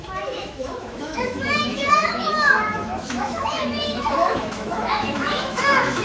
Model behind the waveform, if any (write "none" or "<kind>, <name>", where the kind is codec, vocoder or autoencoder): autoencoder, DAC-VAE